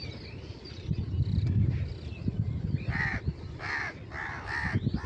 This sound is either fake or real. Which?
real